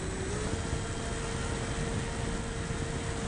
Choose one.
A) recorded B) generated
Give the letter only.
A